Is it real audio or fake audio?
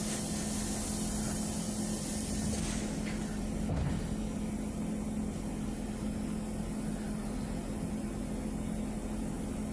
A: real